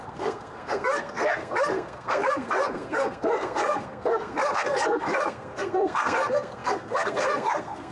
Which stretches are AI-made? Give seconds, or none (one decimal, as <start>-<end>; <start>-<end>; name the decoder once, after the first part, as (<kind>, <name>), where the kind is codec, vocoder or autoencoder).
0.0-7.9 (codec, SNAC)